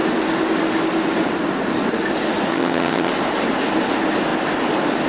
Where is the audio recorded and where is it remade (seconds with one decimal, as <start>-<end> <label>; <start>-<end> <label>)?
0.0-2.5 recorded; 2.5-3.1 remade; 3.1-5.1 recorded

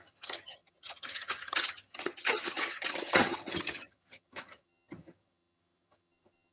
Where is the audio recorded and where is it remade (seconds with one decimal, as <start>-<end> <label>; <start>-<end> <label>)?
0.0-6.5 remade

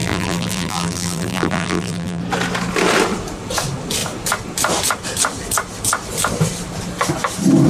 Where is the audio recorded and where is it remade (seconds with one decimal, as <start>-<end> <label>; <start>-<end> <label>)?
0.0-2.2 remade; 2.2-7.7 recorded

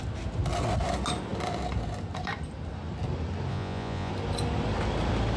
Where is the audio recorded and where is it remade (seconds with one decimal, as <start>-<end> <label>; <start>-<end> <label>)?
0.0-3.5 recorded; 3.5-4.1 remade; 4.1-5.4 recorded

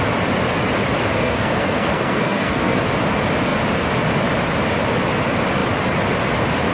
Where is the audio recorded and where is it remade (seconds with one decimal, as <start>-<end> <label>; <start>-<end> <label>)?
0.0-1.0 recorded; 1.0-2.8 remade; 2.8-6.7 recorded

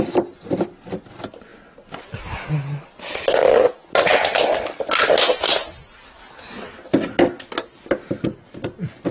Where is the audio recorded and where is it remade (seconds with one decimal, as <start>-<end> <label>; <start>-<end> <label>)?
0.0-9.1 recorded